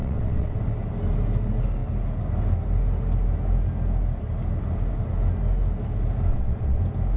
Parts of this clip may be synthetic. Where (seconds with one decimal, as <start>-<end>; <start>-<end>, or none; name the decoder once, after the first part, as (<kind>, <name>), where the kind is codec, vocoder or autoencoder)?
0.0-0.6 (vocoder, WaveNeXt); 6.3-6.8